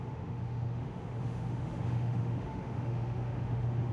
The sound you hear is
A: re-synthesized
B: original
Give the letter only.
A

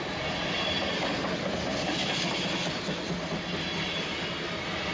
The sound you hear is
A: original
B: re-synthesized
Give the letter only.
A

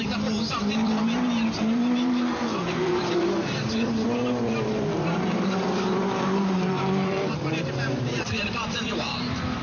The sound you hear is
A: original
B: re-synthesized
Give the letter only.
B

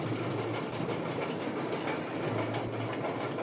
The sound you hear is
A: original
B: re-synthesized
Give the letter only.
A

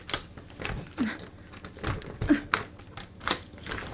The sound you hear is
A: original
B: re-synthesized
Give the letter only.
A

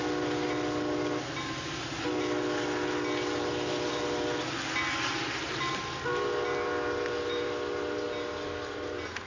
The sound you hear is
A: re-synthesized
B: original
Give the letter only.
B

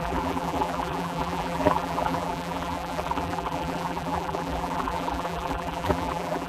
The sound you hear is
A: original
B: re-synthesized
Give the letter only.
B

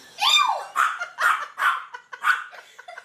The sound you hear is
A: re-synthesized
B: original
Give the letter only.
B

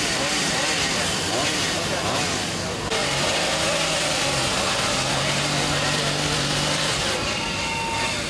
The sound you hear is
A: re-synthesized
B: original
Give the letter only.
A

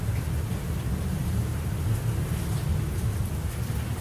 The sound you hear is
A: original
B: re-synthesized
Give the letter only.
A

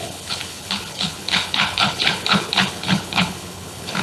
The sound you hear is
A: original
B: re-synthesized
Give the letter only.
B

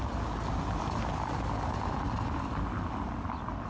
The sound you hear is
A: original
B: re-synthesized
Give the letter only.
A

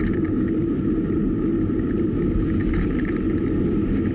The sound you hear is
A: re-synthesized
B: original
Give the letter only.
B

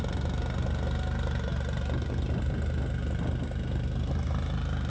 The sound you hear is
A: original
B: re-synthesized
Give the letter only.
A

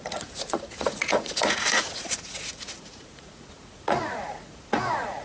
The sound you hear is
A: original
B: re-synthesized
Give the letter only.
B